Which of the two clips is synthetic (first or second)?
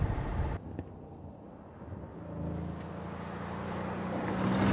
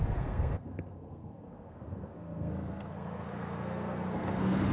second